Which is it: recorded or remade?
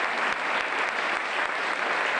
recorded